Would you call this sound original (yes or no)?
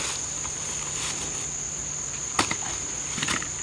yes